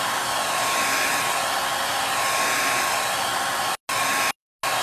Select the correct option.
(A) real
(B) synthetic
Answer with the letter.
A